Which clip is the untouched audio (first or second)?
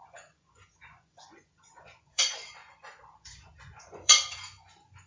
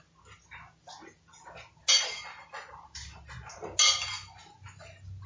second